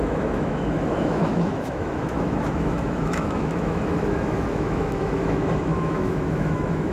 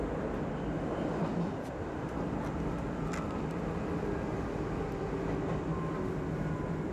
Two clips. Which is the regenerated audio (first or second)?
first